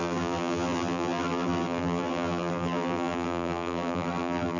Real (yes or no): no